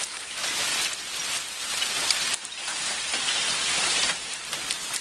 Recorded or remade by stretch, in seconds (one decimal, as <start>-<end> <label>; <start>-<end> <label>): 0.0-0.7 remade; 0.7-1.8 recorded; 1.8-5.0 remade